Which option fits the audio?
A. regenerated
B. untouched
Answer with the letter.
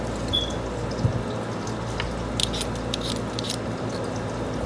B